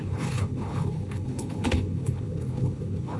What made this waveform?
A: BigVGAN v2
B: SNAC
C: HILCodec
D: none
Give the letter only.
C